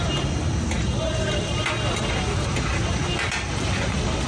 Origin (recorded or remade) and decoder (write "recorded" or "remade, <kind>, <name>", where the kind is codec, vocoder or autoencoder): recorded